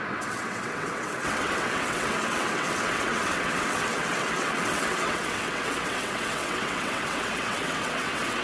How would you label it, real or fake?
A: fake